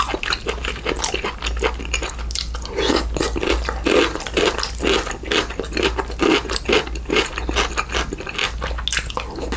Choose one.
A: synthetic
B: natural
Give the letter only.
B